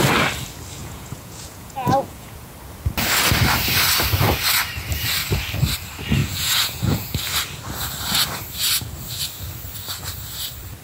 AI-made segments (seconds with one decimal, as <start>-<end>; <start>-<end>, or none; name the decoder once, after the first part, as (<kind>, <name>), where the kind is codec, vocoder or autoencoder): 0.8-2.5 (vocoder, Vocos); 6.2-7.2